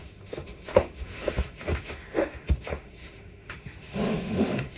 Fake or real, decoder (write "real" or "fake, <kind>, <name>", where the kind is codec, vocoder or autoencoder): fake, autoencoder, DAC-VAE